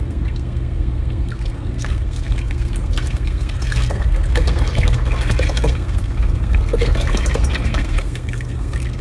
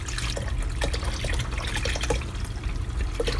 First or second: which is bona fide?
second